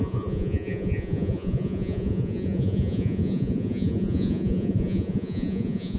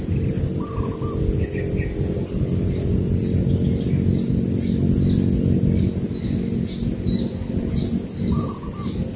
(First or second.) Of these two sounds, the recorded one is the second